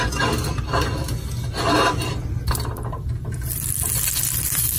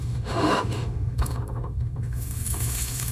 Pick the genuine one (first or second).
first